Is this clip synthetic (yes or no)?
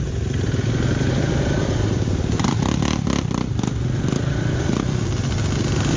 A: yes